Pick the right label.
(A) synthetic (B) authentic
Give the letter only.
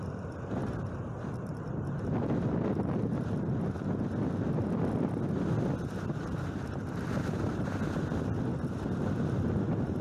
B